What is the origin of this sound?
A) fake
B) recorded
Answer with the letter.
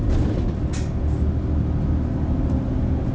B